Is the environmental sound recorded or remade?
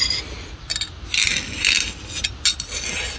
recorded